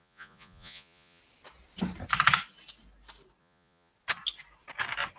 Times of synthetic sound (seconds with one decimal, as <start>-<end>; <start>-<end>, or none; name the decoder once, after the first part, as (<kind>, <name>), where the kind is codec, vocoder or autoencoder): 0.0-1.2 (vocoder, Vocos); 3.4-3.9